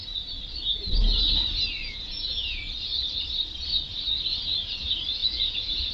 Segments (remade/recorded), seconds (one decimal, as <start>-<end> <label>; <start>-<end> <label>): 0.0-1.8 recorded; 1.8-2.6 remade; 2.6-5.2 recorded; 5.2-5.9 remade